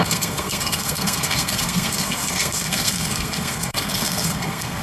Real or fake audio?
fake